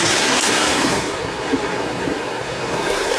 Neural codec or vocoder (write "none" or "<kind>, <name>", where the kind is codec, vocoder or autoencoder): codec, SNAC